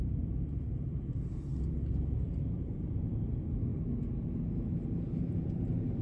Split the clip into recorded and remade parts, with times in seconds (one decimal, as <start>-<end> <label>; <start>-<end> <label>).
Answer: 0.0-1.5 remade; 1.5-2.2 recorded; 2.2-3.7 remade; 3.7-4.7 recorded; 4.7-6.0 remade